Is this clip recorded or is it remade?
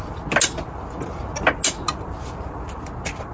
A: recorded